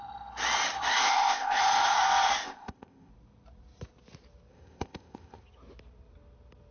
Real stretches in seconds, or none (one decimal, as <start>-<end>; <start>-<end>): 0.0-0.9; 1.6-2.4; 3.1-4.5; 5.4-6.7